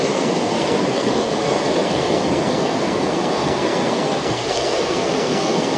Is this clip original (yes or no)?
no